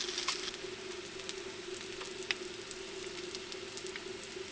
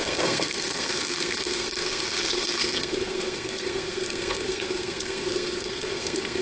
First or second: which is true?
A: first